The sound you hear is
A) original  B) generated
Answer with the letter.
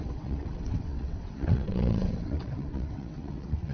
B